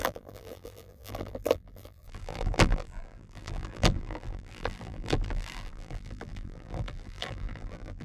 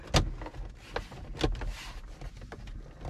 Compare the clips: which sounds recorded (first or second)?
second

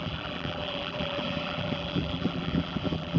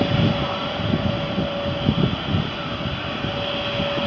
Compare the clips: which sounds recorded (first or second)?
second